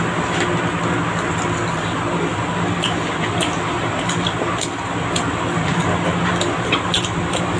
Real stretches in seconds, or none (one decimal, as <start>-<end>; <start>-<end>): 0.0-7.6